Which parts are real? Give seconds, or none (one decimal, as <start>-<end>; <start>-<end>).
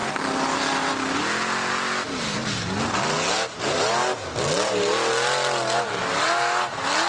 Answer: 0.0-7.1